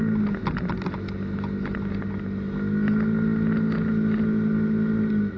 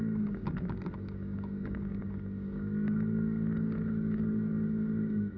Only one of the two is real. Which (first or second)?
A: first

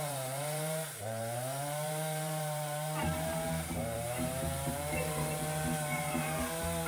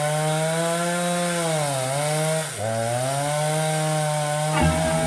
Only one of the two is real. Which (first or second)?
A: second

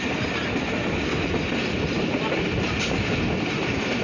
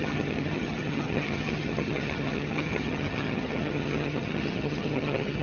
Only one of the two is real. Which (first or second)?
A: first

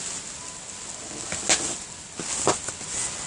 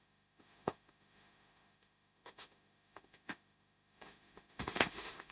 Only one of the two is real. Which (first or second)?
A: first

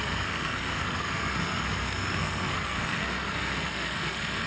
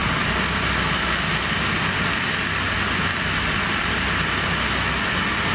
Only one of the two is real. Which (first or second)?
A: second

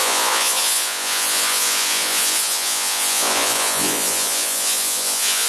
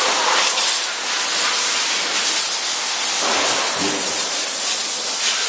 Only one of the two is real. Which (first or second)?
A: second